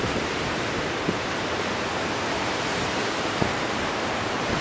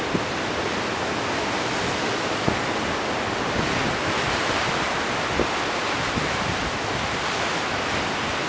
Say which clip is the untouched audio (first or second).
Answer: second